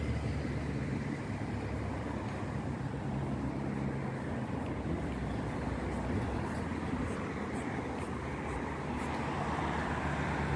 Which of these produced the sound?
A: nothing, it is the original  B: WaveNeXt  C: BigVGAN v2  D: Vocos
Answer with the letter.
A